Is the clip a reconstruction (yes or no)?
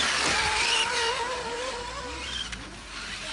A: no